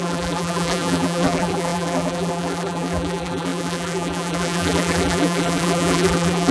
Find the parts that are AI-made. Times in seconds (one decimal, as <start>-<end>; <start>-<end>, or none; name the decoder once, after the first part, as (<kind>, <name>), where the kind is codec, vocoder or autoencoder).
0.0-6.5 (vocoder, BigVGAN v2)